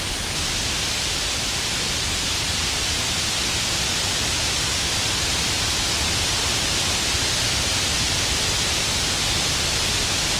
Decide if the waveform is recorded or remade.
recorded